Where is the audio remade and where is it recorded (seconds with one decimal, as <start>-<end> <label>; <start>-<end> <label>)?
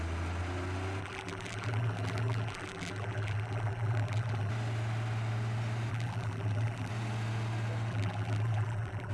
0.0-1.0 recorded; 1.0-4.5 remade; 4.5-5.9 recorded; 5.9-6.9 remade; 6.9-7.9 recorded; 7.9-9.1 remade